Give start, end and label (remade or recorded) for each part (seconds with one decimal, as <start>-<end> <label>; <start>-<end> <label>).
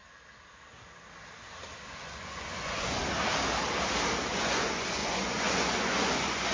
0.0-1.9 recorded; 1.9-3.0 remade; 3.0-4.3 recorded; 4.3-6.5 remade